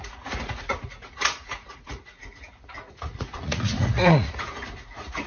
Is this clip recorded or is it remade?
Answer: remade